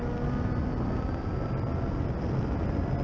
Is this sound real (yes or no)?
yes